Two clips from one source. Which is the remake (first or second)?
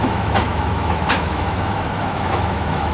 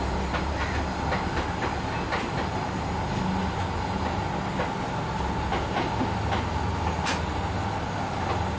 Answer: first